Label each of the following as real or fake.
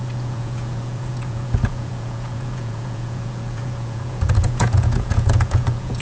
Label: fake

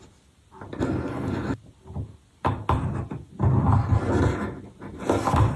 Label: real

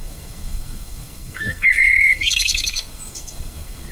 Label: fake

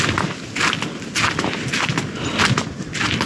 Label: real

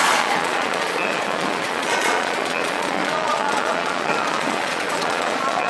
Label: fake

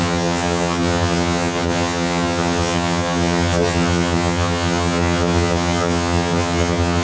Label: fake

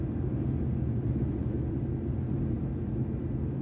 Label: real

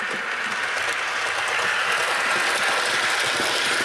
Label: real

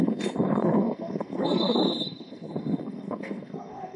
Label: fake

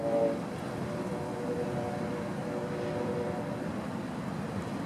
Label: real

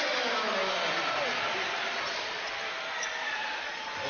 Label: real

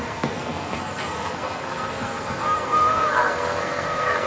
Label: fake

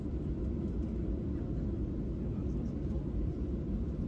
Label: real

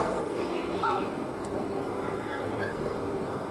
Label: fake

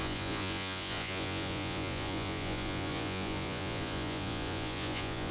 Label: fake